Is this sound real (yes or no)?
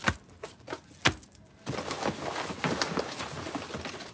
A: yes